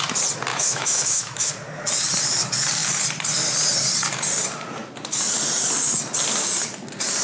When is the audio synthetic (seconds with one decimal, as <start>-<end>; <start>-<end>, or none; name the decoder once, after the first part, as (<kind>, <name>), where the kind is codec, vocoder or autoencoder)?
0.5-1.5 (autoencoder, DAC-VAE)